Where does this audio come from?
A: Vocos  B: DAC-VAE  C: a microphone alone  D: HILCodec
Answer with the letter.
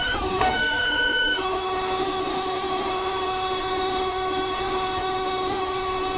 B